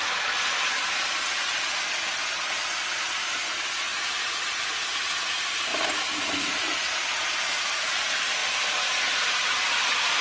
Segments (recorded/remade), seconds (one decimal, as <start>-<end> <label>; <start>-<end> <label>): 0.0-2.9 recorded; 2.9-5.7 remade; 5.7-6.4 recorded; 6.4-10.2 remade